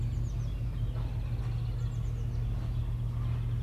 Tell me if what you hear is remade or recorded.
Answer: recorded